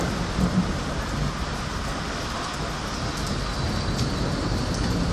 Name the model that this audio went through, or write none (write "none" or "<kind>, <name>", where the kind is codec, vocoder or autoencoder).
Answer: none